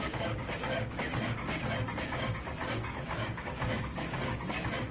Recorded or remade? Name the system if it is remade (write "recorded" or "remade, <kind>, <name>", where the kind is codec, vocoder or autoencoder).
remade, codec, DAC